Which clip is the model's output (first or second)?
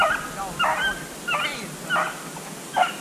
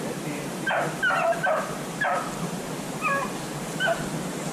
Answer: second